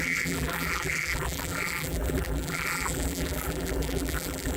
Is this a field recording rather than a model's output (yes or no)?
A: no